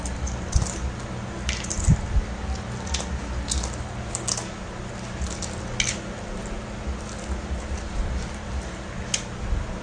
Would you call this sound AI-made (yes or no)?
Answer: no